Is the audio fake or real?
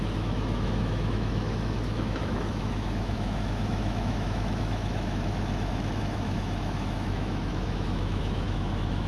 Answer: fake